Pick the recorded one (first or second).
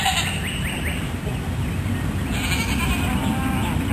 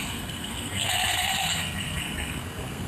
first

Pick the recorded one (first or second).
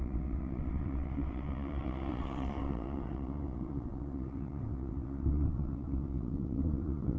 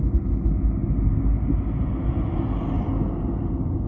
second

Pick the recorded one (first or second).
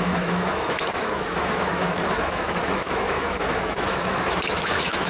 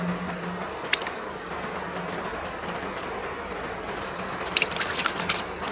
second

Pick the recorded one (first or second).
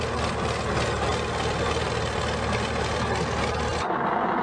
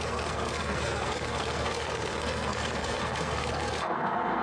first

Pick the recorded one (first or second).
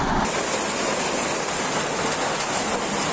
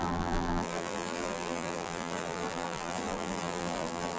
first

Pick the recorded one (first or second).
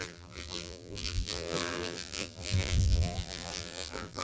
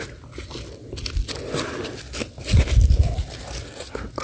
second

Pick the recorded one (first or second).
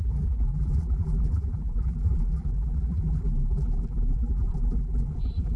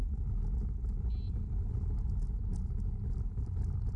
second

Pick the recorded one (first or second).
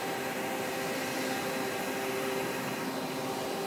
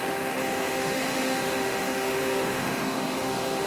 first